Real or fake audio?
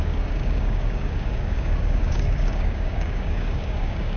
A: fake